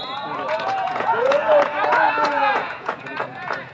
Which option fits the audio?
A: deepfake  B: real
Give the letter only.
A